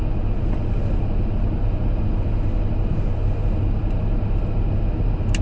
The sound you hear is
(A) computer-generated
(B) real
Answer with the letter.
B